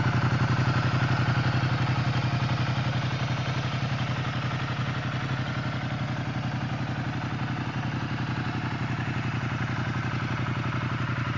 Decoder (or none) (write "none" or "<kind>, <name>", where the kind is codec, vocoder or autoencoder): none